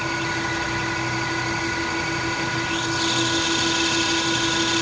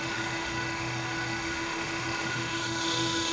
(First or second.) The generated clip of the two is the second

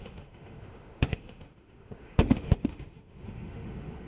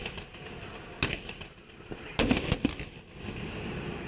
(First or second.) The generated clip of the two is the first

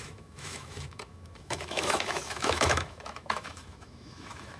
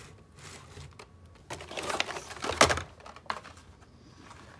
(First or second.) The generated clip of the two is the first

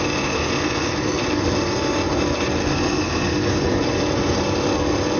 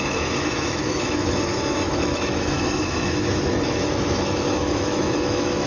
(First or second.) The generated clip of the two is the second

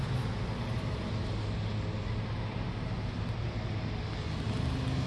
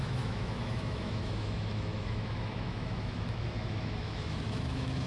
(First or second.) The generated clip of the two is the second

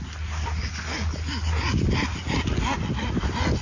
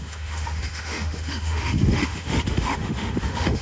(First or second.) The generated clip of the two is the second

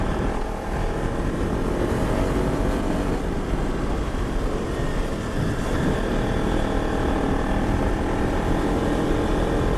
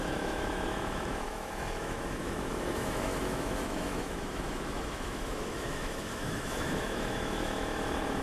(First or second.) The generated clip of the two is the second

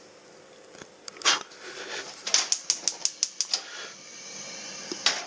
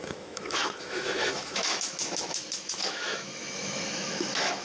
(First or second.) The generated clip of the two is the second